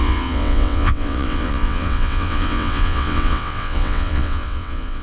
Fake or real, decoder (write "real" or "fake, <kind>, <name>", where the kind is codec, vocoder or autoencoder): fake, vocoder, WaveNeXt